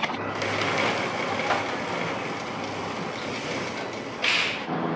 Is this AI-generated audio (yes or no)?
no